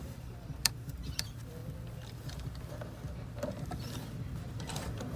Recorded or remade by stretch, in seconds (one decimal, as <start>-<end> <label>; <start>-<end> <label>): 0.0-1.6 remade; 1.6-4.6 recorded; 4.6-5.2 remade